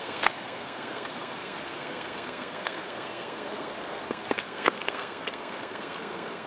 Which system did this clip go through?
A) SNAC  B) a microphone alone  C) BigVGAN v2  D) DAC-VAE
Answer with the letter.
A